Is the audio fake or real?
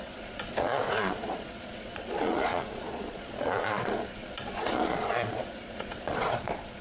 fake